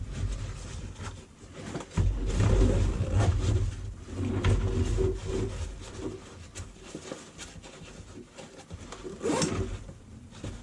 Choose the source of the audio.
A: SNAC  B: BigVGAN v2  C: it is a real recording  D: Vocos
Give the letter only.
C